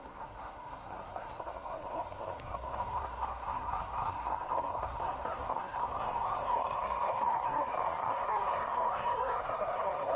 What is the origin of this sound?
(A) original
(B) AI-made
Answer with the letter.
B